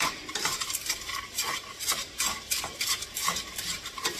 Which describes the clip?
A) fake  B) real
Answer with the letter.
A